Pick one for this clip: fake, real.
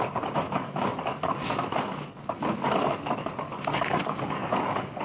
fake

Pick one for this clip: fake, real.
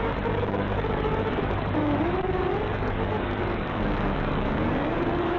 fake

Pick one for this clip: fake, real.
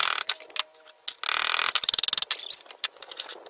real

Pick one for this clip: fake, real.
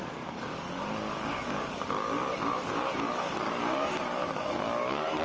fake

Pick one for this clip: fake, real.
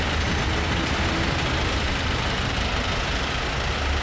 real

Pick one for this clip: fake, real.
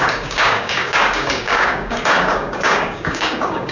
fake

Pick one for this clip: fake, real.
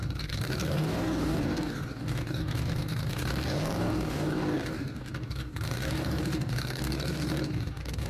fake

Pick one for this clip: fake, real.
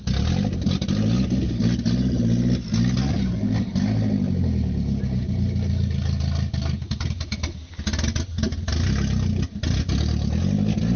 real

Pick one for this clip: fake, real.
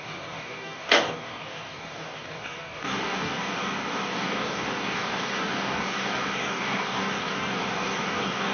fake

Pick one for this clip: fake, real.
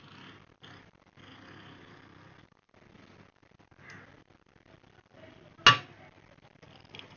real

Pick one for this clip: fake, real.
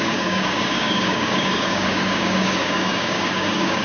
fake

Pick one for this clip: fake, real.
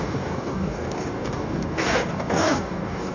fake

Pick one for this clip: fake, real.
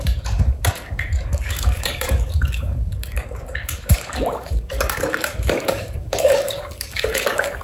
fake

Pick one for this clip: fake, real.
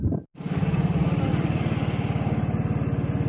real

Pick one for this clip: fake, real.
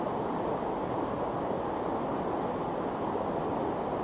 real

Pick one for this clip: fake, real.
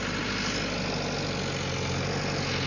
real